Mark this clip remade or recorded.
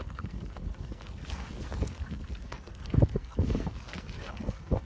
remade